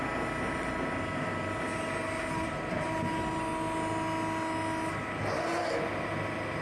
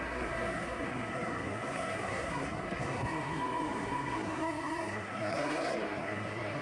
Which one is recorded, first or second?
first